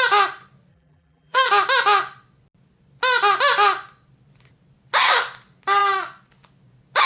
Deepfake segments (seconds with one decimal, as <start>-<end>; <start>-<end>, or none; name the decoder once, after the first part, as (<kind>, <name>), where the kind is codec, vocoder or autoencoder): 0.7-1.5 (vocoder, BigVGAN v2)